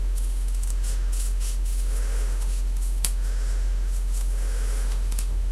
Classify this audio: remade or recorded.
remade